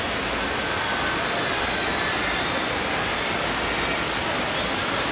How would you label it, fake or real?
real